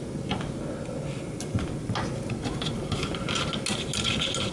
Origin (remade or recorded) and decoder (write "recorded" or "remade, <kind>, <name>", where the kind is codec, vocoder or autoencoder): recorded